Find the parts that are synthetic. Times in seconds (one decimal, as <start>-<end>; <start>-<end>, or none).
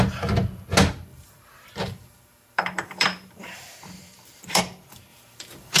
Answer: 1.1-4.6; 5.1-5.8